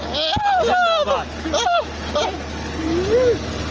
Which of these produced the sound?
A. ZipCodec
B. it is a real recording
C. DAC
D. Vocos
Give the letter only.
B